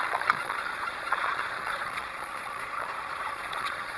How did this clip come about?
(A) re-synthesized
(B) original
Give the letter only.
A